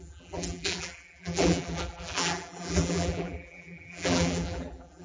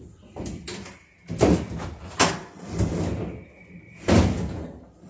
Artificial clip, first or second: first